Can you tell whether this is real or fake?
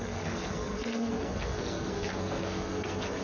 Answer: fake